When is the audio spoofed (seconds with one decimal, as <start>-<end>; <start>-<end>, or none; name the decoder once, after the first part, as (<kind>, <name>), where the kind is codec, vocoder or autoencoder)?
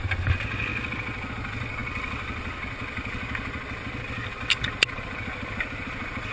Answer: none